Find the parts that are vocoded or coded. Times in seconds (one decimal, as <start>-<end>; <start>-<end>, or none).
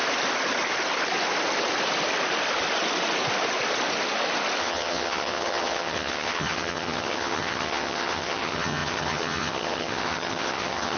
4.6-11.0